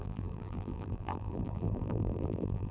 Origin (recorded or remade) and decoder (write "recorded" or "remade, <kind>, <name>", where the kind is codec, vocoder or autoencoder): remade, vocoder, BigVGAN v2